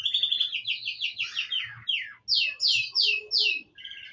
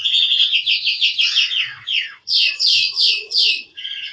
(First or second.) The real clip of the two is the first